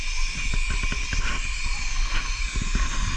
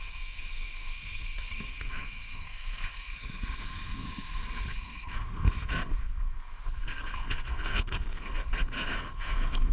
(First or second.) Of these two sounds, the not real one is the second